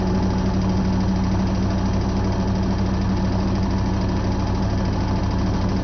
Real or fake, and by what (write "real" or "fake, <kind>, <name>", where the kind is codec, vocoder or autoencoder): real